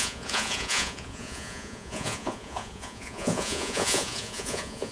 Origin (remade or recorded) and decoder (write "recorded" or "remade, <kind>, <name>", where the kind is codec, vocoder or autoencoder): remade, vocoder, Vocos